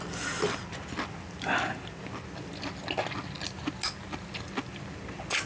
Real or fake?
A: real